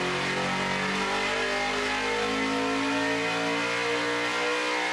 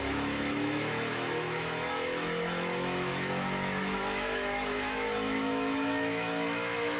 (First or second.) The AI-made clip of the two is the second